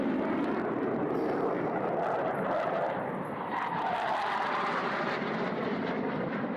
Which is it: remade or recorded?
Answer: recorded